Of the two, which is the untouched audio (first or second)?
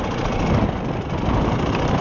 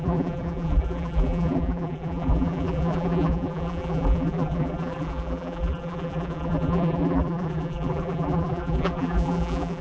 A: first